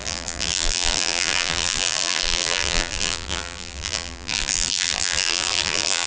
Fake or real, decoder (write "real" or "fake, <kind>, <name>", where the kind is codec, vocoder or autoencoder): fake, vocoder, BigVGAN v2